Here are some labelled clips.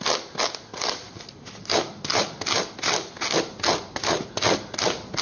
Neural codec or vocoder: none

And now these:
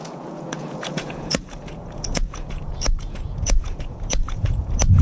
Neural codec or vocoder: vocoder, Vocos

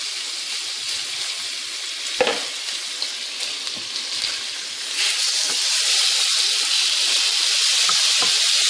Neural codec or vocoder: none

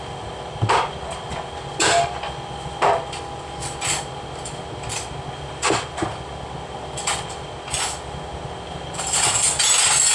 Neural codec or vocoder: none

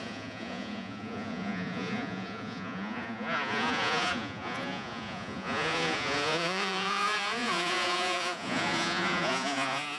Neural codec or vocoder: vocoder, Vocos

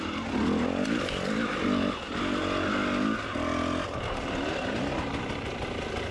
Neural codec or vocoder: none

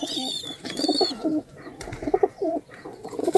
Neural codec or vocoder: vocoder, Vocos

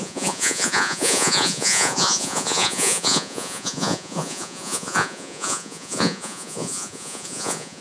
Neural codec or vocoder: vocoder, Vocos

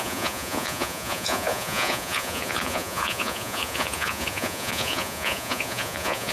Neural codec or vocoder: vocoder, Vocos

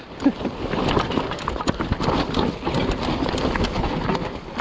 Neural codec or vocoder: none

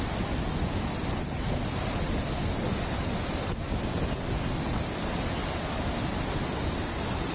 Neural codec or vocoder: none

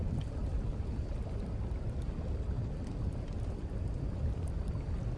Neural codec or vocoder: none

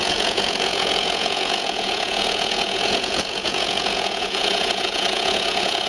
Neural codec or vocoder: vocoder, Vocos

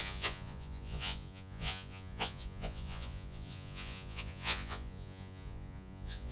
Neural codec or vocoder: vocoder, Vocos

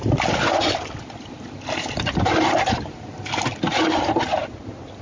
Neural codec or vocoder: none